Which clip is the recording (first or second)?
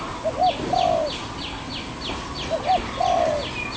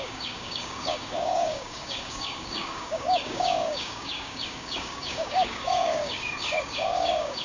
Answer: first